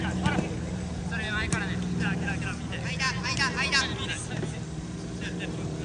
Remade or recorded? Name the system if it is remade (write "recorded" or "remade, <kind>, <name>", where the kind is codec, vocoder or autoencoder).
recorded